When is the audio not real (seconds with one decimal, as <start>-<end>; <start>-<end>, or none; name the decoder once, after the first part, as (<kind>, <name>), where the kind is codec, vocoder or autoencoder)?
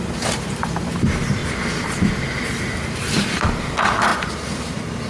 0.0-1.4 (vocoder, BigVGAN v2); 2.6-5.1